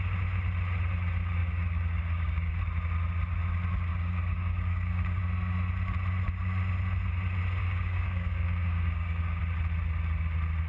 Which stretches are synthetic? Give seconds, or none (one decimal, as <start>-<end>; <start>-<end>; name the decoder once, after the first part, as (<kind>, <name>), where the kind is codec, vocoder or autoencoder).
1.4-2.5 (codec, DAC); 3.9-5.2; 7.6-9.4